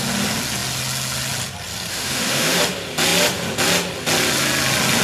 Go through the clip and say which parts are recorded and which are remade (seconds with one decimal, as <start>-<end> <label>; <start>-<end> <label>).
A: 0.0-1.9 recorded; 1.9-2.6 remade; 2.6-5.0 recorded